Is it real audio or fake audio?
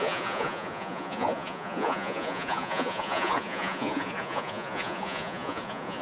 fake